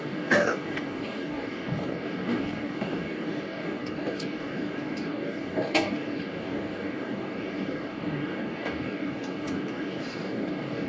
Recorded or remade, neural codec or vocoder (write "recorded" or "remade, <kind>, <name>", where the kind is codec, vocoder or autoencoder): remade, codec, DAC